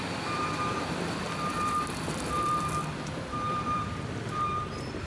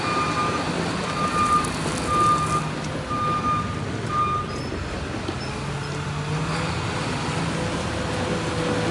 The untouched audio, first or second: second